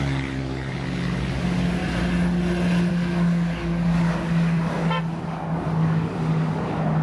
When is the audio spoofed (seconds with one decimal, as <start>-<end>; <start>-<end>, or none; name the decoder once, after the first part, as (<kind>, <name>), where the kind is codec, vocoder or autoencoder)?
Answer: 0.0-1.8 (codec, DAC); 2.9-7.0